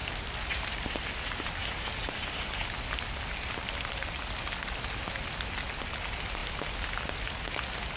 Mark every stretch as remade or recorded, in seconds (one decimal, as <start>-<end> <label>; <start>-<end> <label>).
0.0-8.0 recorded